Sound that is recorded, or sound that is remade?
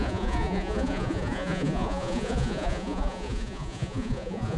remade